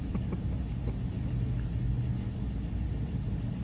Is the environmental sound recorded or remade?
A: recorded